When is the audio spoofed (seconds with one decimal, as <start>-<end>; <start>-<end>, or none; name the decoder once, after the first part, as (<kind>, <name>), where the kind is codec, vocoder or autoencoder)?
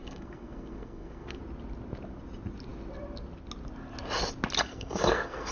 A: 0.0-1.4 (codec, SNAC); 4.7-5.5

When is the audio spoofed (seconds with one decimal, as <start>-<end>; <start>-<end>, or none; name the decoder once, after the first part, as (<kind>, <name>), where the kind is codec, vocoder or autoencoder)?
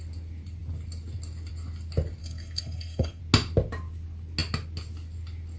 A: 2.2-3.2 (codec, SNAC)